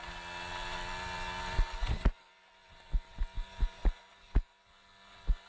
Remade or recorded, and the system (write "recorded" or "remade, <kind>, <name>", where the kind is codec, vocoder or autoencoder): recorded